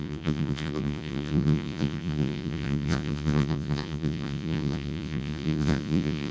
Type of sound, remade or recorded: remade